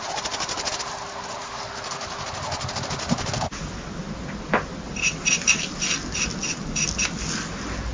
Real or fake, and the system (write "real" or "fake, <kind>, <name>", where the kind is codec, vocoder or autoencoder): real